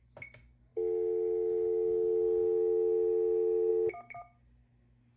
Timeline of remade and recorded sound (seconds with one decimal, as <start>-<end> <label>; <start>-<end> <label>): 0.0-5.2 recorded